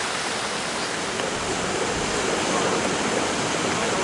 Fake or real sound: real